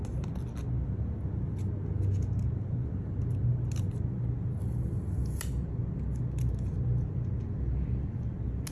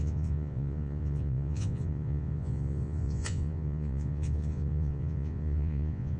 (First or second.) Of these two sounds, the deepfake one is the second